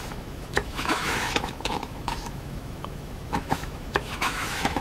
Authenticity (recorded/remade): remade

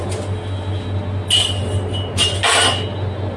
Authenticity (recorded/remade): recorded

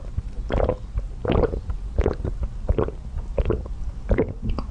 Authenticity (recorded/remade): recorded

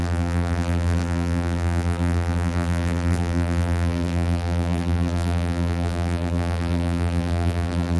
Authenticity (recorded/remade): remade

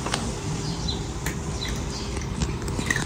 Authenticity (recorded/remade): recorded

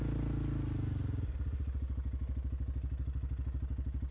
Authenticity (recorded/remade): recorded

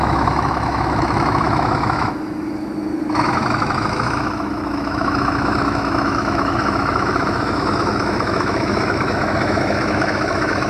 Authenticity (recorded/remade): remade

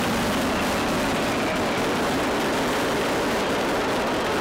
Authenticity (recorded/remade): recorded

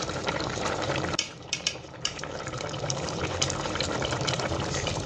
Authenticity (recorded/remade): remade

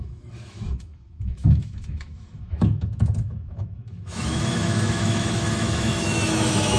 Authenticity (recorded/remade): remade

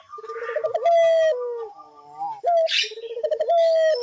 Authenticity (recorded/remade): recorded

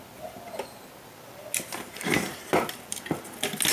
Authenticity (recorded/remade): recorded